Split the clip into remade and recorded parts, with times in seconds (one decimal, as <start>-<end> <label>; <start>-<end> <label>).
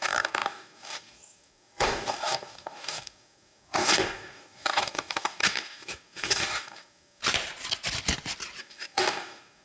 0.0-7.2 remade; 7.2-8.6 recorded; 8.6-9.6 remade